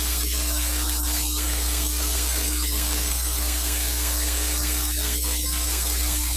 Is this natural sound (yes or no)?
no